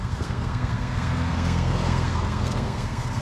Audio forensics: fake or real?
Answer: fake